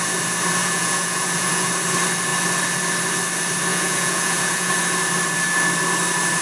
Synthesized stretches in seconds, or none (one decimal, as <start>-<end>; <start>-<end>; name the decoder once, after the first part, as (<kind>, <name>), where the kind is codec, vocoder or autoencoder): 0.6-1.7 (vocoder, Vocos); 3.7-4.7